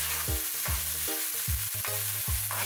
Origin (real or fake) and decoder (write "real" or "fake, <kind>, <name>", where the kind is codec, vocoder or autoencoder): real